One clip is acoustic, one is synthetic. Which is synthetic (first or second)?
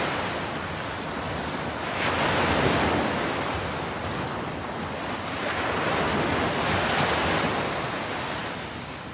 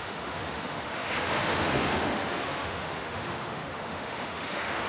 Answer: second